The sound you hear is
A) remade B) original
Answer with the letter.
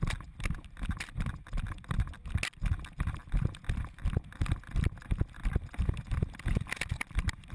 B